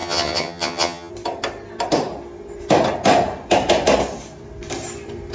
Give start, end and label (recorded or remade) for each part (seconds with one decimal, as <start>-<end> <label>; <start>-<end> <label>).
0.0-1.1 remade; 1.1-5.3 recorded

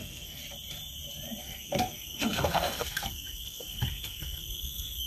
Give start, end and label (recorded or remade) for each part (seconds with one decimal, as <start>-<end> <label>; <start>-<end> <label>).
0.0-0.4 remade; 0.4-1.4 recorded; 1.4-5.1 remade

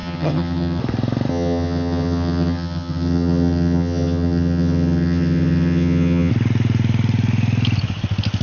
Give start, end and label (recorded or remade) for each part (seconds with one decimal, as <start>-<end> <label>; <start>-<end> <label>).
0.0-0.8 remade; 0.8-1.3 recorded; 1.3-6.3 remade; 6.3-8.4 recorded